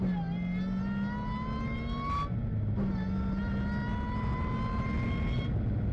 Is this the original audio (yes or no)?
yes